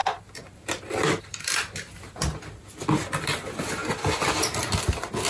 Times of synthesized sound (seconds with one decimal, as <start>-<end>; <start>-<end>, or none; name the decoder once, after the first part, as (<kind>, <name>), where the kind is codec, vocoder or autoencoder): none